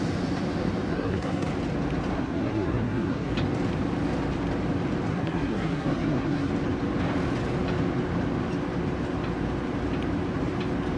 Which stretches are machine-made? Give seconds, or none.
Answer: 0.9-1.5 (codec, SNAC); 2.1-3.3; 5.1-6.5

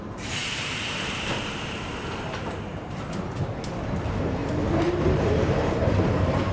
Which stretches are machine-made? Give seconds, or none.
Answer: 0.0-6.5 (vocoder, BigVGAN v2)

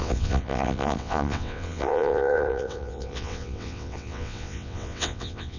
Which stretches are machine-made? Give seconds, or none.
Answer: 0.0-5.6 (vocoder, WaveNeXt)

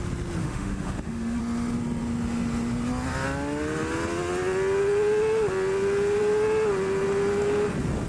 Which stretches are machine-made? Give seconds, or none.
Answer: 0.4-1.4 (autoencoder, DAC-VAE)

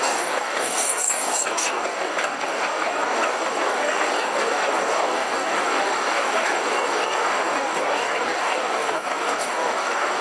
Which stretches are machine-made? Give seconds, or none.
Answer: 0.0-10.2 (codec, DAC)